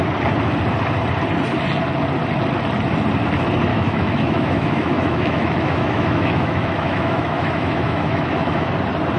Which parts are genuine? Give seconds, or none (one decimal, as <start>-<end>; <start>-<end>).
0.0-3.7; 8.7-9.2